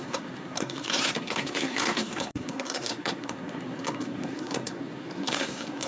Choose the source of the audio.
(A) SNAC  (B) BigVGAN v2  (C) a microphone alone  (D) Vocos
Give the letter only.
A